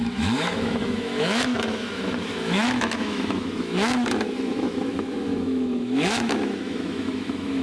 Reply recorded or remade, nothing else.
remade